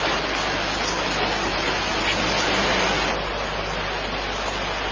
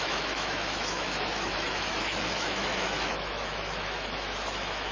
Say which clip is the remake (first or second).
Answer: second